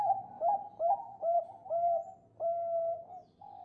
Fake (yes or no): no